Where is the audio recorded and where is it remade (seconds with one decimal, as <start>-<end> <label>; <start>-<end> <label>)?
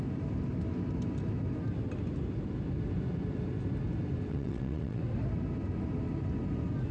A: 0.0-4.3 recorded; 4.3-5.0 remade; 5.0-6.9 recorded